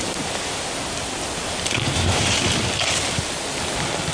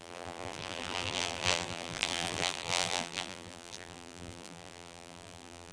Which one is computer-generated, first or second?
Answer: second